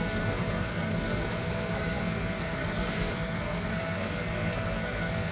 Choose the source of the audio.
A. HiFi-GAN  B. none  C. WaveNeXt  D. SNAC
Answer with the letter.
D